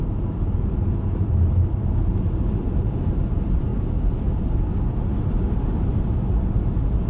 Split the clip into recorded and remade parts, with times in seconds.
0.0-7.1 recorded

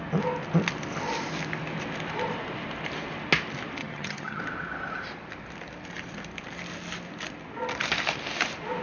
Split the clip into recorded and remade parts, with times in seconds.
0.0-3.8 recorded; 3.8-4.4 remade; 4.4-8.8 recorded

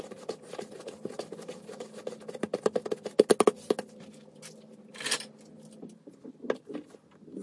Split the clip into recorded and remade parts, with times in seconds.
0.0-7.4 recorded

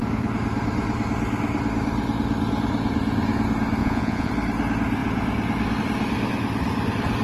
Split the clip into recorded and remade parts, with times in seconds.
0.0-3.8 recorded; 3.8-4.3 remade; 4.3-7.2 recorded

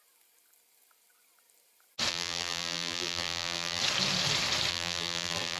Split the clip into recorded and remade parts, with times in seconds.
0.0-2.1 recorded; 2.1-3.8 remade; 3.8-4.7 recorded; 4.7-5.6 remade